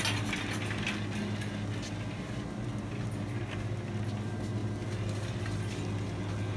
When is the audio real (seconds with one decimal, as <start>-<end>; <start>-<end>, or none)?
0.0-6.6